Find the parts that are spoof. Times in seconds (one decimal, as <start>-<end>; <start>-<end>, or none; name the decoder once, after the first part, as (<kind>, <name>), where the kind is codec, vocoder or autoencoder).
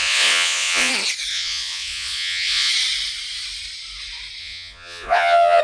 0.0-0.9 (vocoder, Vocos); 1.3-2.7; 4.4-5.6